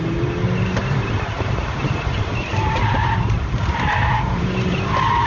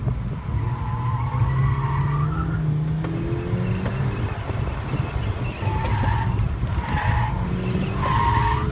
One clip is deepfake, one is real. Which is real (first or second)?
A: second